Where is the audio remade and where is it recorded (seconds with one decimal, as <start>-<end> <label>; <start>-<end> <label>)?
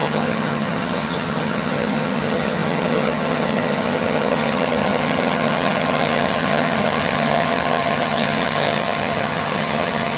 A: 0.0-10.2 remade